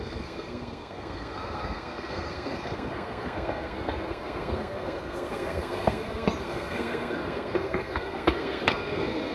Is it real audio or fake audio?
fake